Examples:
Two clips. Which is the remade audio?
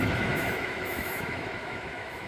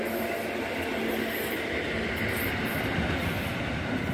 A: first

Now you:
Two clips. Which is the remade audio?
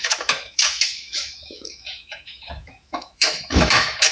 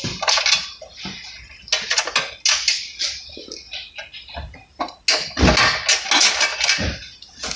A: first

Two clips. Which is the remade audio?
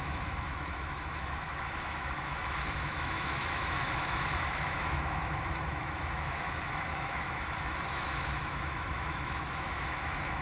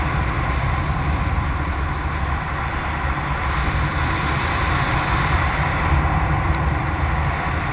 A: first